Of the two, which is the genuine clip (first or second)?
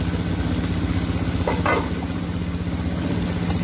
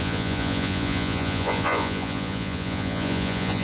first